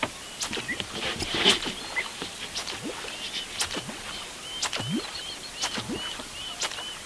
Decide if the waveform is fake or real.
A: real